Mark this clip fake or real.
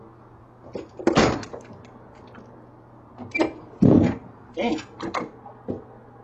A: real